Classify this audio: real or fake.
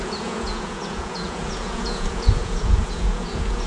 fake